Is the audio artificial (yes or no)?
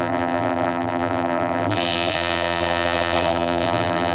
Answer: yes